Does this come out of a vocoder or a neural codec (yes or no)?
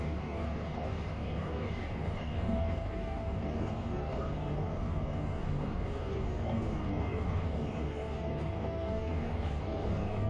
yes